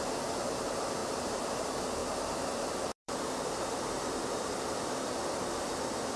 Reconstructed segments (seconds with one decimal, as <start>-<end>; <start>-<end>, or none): 1.0-1.5; 2.0-5.1